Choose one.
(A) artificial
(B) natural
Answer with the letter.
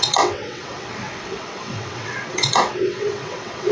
A